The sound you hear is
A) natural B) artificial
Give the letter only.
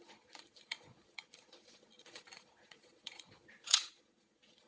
B